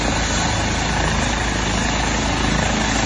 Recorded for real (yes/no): yes